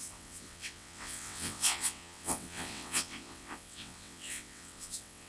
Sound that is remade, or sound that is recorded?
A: remade